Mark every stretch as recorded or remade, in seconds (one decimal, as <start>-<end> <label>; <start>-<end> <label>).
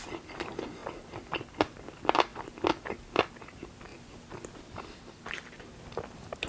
0.0-6.5 recorded